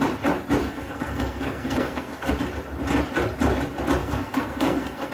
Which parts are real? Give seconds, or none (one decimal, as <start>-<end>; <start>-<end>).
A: 0.0-0.6; 2.3-4.0